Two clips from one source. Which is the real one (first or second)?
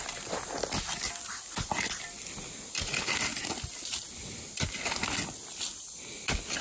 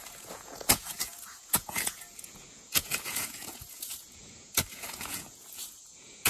first